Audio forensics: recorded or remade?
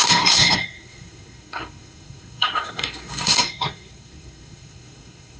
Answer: remade